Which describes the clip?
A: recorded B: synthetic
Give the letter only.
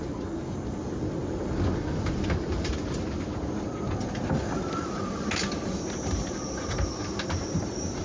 A